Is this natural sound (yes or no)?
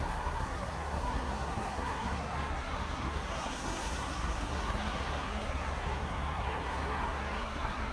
no